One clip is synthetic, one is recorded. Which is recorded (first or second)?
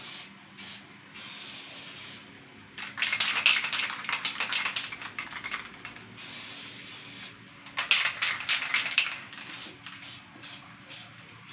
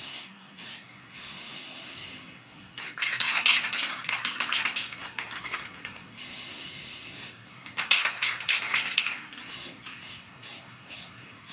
first